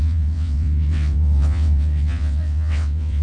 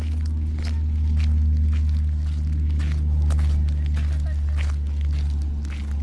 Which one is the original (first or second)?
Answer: second